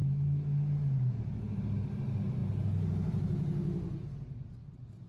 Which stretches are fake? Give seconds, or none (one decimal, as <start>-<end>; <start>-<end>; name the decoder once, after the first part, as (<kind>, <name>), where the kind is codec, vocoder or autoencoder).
0.0-1.6 (autoencoder, DAC-VAE)